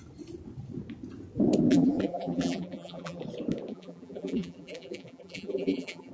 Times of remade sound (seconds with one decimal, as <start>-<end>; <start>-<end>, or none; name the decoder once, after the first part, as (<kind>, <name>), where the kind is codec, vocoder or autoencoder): 1.7-3.2 (vocoder, BigVGAN v2); 3.7-6.1